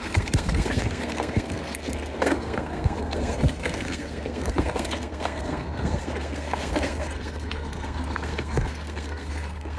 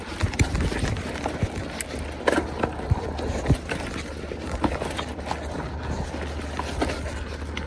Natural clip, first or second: second